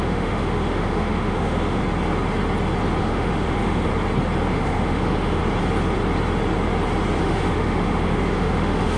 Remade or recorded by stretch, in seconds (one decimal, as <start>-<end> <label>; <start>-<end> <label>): 0.0-1.8 remade; 1.8-3.0 recorded; 3.0-3.9 remade; 3.9-4.5 recorded; 4.5-5.4 remade; 5.4-7.2 recorded; 7.2-9.0 remade

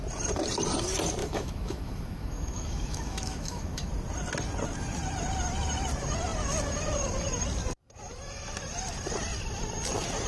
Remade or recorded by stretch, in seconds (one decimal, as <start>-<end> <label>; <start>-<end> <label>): 0.0-1.2 recorded; 1.2-3.9 remade; 3.9-10.3 recorded

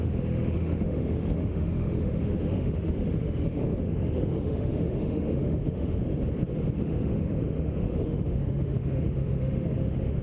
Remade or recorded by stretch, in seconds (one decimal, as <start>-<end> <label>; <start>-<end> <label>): 0.0-6.0 remade; 6.0-6.8 recorded; 6.8-10.2 remade